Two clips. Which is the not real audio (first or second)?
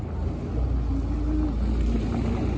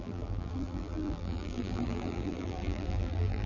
second